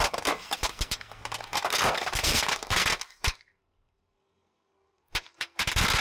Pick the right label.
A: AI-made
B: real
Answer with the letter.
A